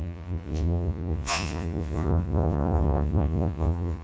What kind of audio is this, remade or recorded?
remade